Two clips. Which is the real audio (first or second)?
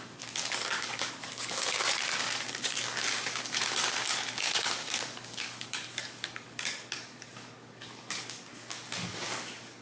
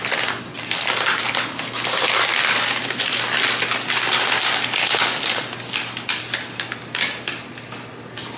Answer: second